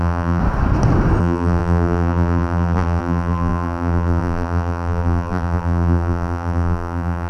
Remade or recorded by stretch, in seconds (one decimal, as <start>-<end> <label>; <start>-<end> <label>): 0.0-0.4 remade; 0.4-1.2 recorded; 1.2-7.3 remade